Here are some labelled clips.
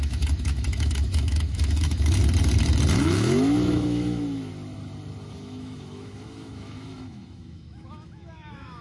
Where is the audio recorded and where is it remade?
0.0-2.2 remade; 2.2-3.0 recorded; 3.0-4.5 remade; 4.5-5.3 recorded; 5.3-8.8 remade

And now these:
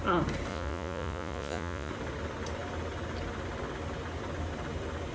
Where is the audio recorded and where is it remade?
0.0-0.5 recorded; 0.5-1.9 remade; 1.9-5.1 recorded

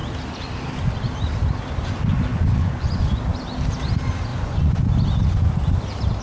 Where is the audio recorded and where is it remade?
0.0-2.3 recorded; 2.3-3.2 remade; 3.2-4.3 recorded; 4.3-4.8 remade; 4.8-6.2 recorded